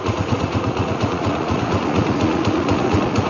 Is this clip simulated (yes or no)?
yes